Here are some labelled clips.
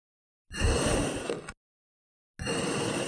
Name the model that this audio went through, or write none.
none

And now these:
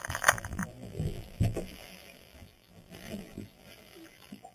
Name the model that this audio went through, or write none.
vocoder, BigVGAN v2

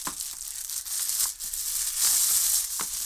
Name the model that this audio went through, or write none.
none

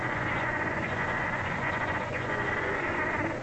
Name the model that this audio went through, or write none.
vocoder, Vocos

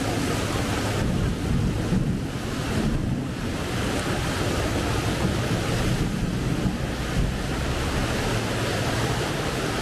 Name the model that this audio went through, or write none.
none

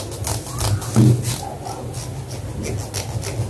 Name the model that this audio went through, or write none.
none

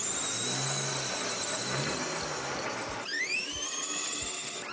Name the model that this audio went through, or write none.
none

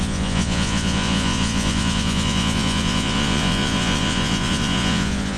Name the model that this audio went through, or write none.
vocoder, Vocos